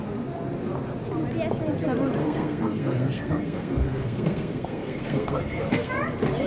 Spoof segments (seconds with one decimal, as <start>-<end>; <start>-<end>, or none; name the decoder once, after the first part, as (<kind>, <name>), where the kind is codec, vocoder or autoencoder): 2.2-5.9 (codec, SNAC)